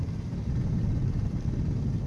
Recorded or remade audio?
recorded